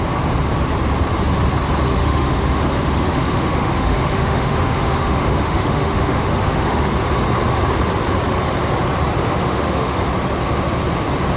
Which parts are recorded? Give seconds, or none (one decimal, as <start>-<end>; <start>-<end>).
0.0-2.0; 6.9-9.2; 10.1-11.4